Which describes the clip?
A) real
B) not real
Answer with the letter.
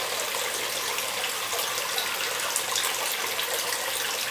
A